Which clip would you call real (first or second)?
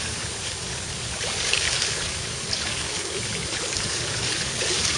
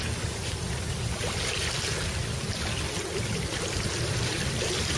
second